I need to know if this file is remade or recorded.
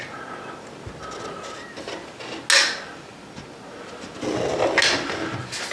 recorded